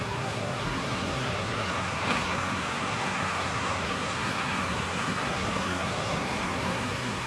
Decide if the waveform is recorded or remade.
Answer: remade